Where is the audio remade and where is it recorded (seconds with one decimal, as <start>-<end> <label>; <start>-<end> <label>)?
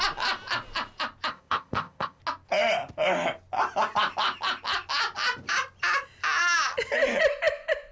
0.0-1.3 recorded; 1.3-2.2 remade; 2.2-7.9 recorded